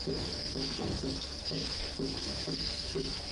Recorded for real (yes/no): no